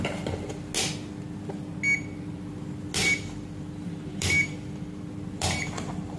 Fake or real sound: real